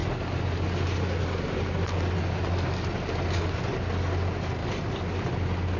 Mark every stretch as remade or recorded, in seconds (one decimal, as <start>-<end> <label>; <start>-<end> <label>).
0.0-5.8 recorded